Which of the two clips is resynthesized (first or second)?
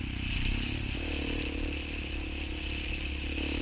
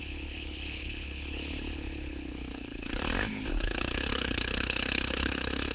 second